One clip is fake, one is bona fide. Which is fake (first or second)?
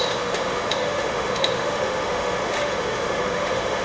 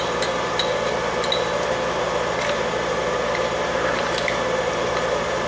first